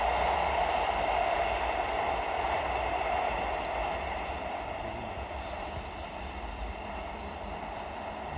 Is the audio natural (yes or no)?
no